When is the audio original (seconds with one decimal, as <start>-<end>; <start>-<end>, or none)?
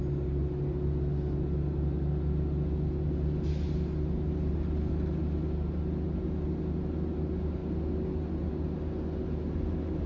0.0-10.1